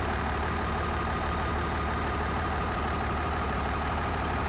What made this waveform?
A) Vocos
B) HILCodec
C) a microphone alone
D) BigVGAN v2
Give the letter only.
D